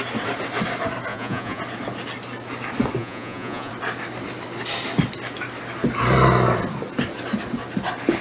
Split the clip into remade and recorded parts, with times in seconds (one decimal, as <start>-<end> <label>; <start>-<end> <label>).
0.0-1.1 recorded; 1.1-1.6 remade; 1.6-3.0 recorded; 3.0-3.7 remade; 3.7-8.2 recorded